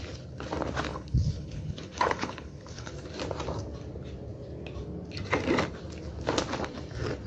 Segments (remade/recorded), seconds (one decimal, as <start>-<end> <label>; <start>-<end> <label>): 0.0-0.9 recorded; 0.9-2.9 remade; 2.9-7.3 recorded